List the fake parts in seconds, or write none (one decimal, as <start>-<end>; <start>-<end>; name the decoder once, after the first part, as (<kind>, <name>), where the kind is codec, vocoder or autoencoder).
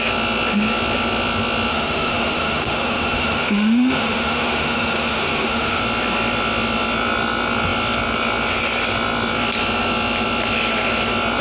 1.7-5.8 (autoencoder, DAC-VAE)